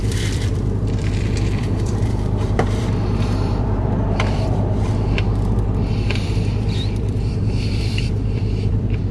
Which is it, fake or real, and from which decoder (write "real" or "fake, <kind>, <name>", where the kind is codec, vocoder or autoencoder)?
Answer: fake, vocoder, BigVGAN v2